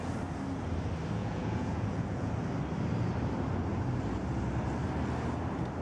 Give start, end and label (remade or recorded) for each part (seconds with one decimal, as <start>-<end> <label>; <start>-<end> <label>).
0.0-1.2 recorded; 1.2-2.3 remade; 2.3-5.8 recorded